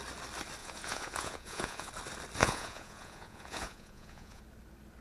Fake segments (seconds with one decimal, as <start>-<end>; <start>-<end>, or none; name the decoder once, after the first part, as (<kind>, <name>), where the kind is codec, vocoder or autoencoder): 0.6-1.9 (vocoder, Vocos); 2.4-4.4